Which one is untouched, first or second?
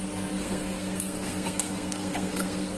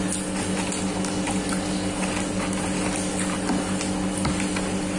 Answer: second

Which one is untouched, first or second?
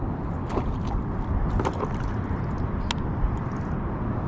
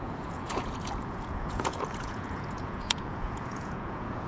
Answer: first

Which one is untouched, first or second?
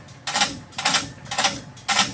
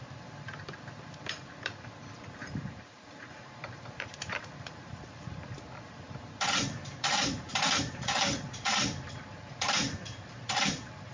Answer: first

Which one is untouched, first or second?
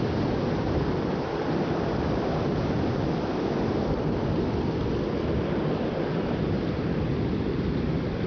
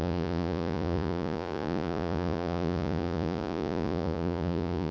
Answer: first